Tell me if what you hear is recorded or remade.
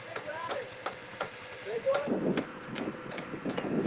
remade